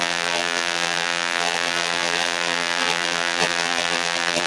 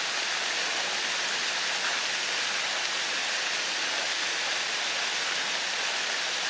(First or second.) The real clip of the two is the second